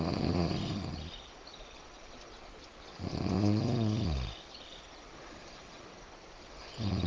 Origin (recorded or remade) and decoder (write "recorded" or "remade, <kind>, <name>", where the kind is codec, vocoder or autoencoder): recorded